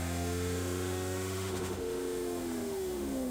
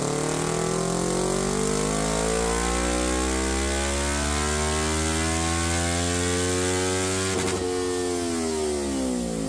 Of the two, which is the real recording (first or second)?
second